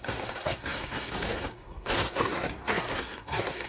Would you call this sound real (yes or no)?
no